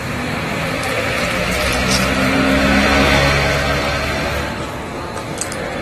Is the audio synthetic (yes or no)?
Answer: no